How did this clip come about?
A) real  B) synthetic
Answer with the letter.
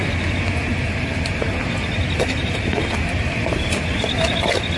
A